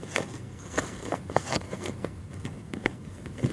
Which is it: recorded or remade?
remade